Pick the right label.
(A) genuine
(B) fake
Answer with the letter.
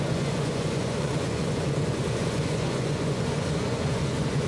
B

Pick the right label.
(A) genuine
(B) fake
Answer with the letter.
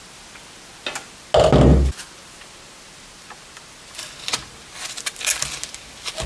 A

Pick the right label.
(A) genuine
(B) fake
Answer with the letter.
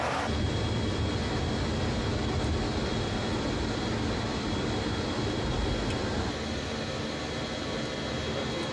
A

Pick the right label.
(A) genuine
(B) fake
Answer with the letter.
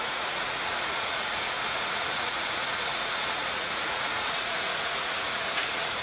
B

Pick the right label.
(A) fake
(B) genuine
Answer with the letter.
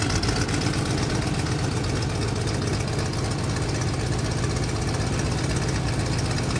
B